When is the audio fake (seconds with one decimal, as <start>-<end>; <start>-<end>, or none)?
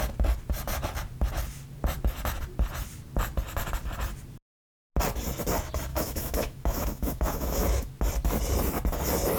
5.9-7.9